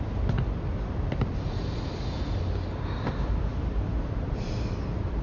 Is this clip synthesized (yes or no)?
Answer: no